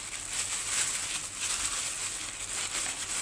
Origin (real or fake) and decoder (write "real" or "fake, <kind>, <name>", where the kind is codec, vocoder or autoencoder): real